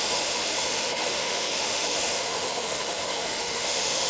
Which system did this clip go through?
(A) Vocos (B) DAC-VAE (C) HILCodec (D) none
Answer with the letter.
B